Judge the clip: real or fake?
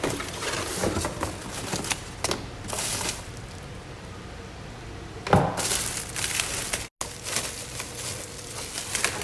real